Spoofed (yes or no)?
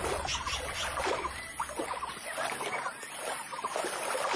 no